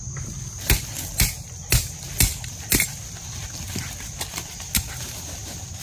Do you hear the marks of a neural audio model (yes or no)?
no